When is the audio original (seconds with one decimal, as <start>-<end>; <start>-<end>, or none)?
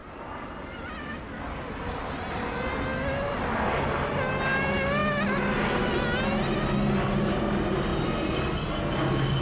0.0-9.4